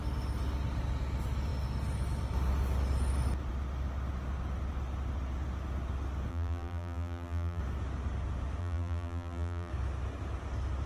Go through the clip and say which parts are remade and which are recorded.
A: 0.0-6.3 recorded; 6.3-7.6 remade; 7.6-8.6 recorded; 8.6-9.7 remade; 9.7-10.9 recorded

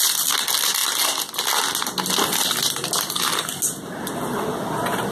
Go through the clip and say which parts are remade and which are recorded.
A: 0.0-5.1 recorded

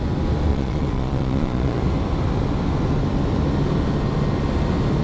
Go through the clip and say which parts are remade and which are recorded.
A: 0.0-0.5 recorded; 0.5-1.8 remade; 1.8-5.0 recorded

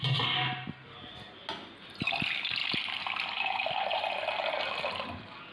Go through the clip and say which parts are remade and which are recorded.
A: 0.0-5.5 recorded

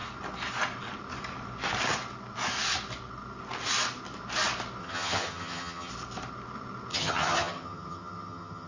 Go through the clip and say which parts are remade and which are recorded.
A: 0.0-4.8 recorded; 4.8-5.9 remade; 5.9-6.9 recorded; 6.9-8.7 remade